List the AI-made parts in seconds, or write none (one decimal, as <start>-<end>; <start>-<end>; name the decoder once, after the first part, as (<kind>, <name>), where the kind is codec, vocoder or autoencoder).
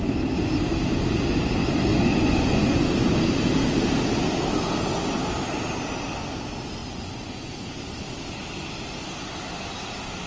1.9-2.9 (vocoder, Vocos); 6.8-7.5